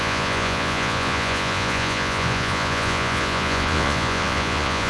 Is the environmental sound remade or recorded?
remade